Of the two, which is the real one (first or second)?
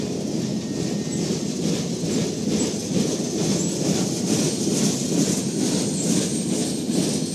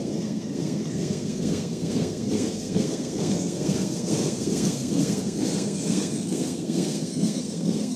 first